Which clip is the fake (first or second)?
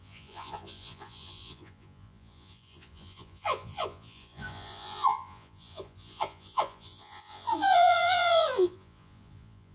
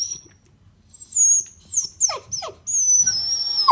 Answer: first